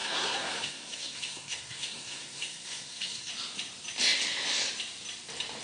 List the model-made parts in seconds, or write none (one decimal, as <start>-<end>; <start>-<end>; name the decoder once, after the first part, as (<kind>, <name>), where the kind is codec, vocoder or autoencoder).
0.0-3.3 (codec, SNAC)